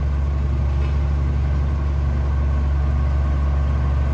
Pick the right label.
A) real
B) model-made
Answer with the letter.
A